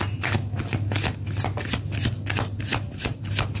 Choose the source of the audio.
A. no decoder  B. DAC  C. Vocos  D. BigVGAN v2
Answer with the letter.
A